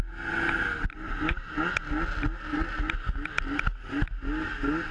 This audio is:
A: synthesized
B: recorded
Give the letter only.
B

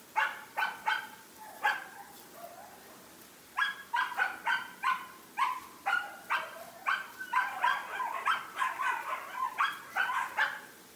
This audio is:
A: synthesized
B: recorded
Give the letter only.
B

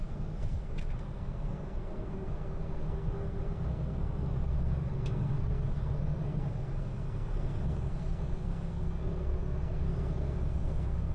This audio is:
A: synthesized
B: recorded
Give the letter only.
A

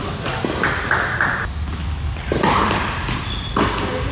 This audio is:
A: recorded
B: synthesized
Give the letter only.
A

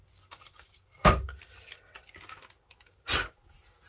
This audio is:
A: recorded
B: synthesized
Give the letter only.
A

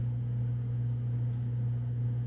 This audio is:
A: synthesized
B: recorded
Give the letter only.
B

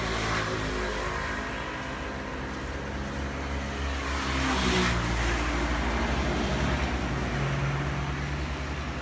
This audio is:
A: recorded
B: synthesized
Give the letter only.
A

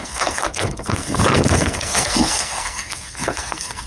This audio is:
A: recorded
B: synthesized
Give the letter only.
B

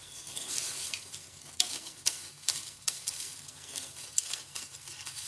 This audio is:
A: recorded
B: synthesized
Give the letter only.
B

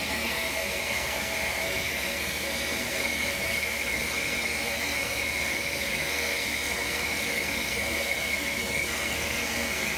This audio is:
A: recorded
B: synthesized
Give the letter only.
B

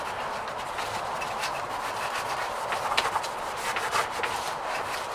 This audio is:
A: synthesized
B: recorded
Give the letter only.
B